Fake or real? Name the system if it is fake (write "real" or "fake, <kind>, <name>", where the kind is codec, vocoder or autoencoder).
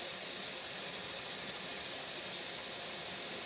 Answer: real